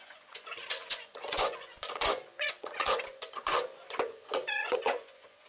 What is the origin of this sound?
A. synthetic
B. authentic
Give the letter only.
A